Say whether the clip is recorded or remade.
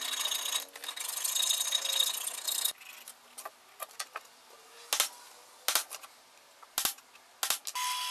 recorded